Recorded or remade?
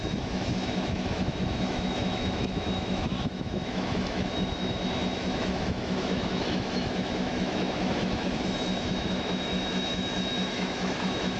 remade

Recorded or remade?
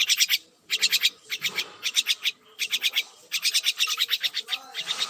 recorded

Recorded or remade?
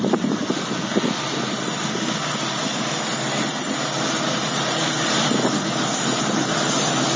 recorded